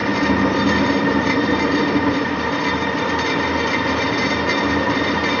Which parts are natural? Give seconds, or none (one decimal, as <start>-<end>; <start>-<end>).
3.1-5.4